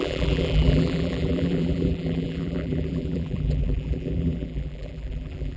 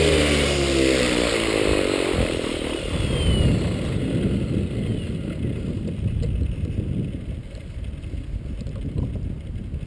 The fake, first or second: first